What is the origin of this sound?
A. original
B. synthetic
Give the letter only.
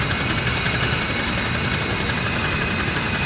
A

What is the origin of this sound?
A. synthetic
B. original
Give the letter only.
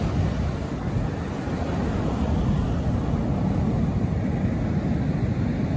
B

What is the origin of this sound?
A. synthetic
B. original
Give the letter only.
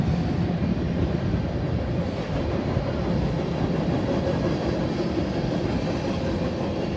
B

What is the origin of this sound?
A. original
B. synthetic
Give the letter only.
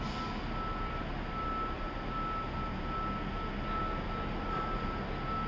A